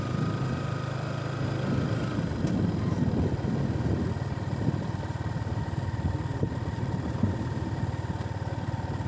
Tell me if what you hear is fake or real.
real